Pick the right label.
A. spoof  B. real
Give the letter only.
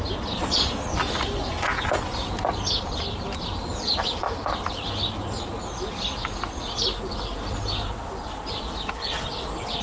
B